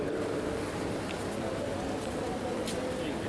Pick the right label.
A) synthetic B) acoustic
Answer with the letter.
B